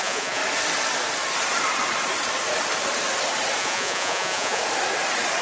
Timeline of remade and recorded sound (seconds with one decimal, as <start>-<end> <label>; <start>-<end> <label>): 0.0-0.4 remade; 0.4-3.6 recorded; 3.6-4.6 remade; 4.6-5.4 recorded